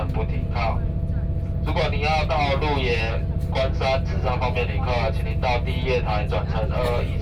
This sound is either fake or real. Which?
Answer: real